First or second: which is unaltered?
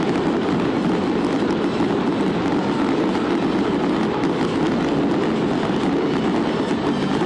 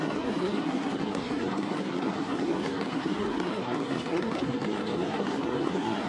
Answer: first